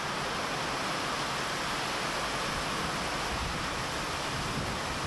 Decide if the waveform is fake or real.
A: real